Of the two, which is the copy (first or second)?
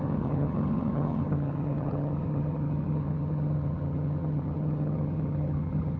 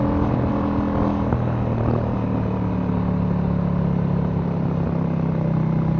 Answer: first